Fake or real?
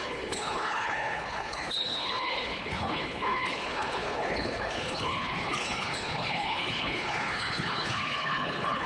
fake